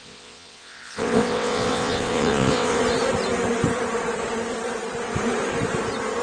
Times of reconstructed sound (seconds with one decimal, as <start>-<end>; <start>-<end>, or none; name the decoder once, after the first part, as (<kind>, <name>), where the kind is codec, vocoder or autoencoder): 0.0-2.8 (vocoder, WaveNeXt)